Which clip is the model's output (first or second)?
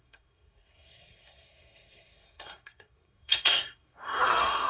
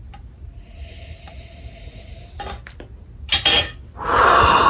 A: first